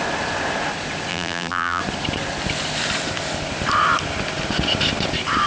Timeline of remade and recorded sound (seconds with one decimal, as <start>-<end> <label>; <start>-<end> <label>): 0.0-1.1 recorded; 1.1-1.8 remade; 1.8-5.5 recorded